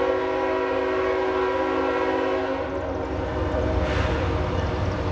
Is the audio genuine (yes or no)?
yes